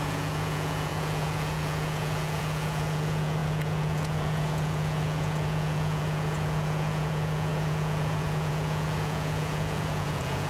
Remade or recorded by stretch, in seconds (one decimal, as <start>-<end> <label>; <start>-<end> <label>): 0.0-10.5 remade